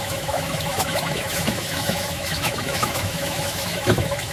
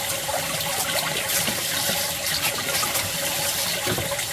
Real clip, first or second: second